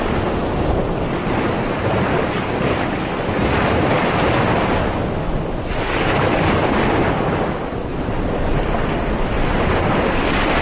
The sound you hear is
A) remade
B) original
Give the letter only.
B